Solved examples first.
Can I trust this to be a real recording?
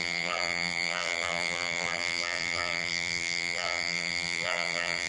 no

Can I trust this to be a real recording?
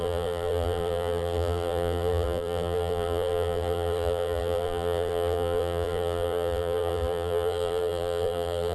no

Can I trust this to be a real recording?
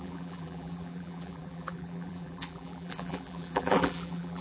no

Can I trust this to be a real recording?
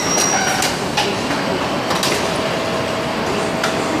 yes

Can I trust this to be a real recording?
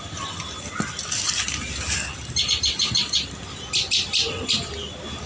yes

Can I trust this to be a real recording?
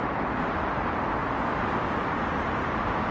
yes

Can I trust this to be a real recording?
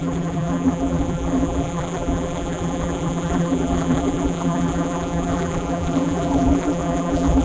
no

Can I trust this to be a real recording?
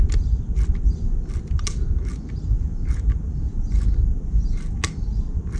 yes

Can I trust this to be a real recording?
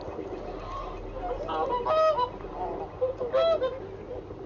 yes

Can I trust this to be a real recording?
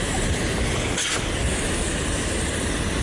yes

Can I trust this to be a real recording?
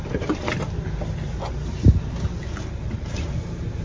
yes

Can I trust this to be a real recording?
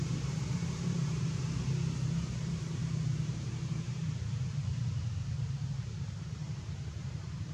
no